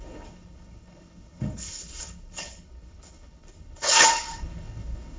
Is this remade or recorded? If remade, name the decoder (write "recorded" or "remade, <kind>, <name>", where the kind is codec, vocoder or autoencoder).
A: remade, codec, HILCodec